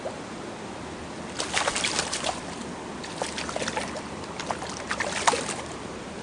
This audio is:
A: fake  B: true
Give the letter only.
A